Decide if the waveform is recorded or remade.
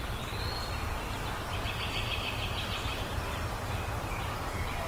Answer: remade